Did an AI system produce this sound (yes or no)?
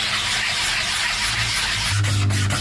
no